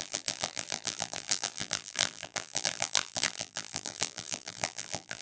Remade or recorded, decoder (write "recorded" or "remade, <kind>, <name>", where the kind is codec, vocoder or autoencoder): remade, vocoder, BigVGAN v2